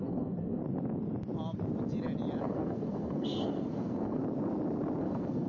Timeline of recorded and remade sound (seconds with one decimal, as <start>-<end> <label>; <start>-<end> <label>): 0.0-0.6 remade; 0.6-2.4 recorded; 2.4-4.2 remade; 4.2-5.0 recorded; 5.0-5.5 remade